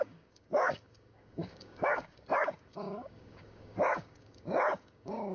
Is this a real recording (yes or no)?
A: no